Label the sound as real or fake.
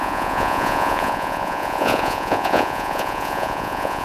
fake